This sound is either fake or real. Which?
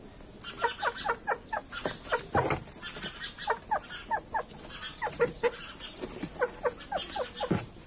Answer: real